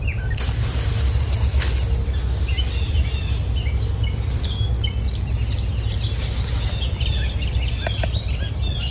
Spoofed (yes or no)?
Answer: no